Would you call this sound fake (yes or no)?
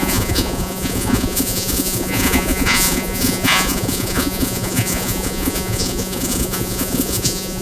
yes